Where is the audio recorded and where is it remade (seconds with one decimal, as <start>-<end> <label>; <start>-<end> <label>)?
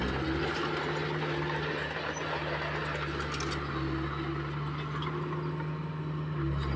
0.0-6.8 recorded